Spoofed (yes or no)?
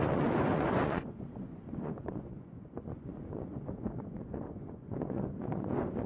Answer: yes